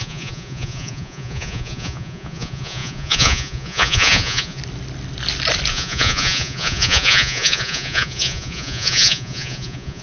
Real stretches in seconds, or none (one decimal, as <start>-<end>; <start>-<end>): 4.6-5.7